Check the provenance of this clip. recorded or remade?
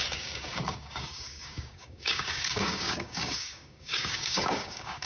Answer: remade